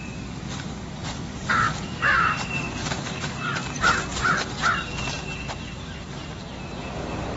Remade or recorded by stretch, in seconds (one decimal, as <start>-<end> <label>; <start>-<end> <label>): 0.0-3.5 remade; 3.5-6.8 recorded; 6.8-7.4 remade